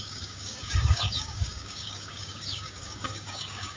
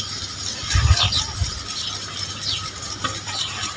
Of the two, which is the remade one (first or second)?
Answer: first